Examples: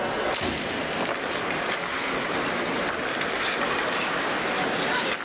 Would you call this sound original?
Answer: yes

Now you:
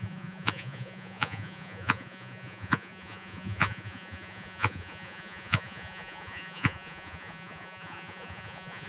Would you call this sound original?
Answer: no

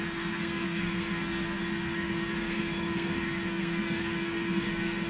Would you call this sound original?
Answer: no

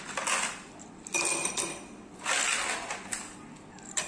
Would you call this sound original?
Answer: yes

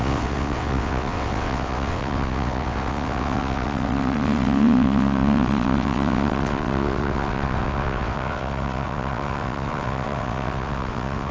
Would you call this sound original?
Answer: no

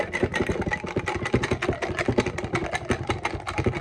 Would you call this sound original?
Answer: yes